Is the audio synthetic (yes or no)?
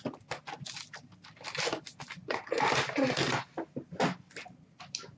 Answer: no